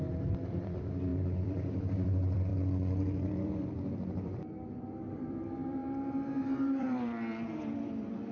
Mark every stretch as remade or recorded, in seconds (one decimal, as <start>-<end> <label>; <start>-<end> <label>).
0.0-2.5 remade; 2.5-3.3 recorded; 3.3-5.8 remade; 5.8-6.8 recorded; 6.8-8.3 remade